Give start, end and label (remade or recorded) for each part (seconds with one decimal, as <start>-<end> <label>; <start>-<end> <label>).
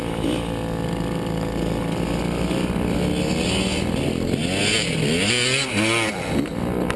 0.0-7.0 recorded